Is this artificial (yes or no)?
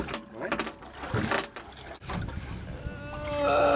no